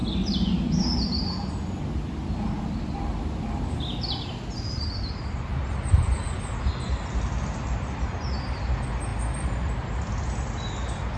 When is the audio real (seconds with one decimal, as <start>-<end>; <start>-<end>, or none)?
0.0-11.2